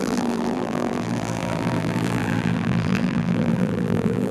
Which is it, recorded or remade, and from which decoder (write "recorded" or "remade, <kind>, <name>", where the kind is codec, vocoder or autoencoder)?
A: remade, vocoder, BigVGAN v2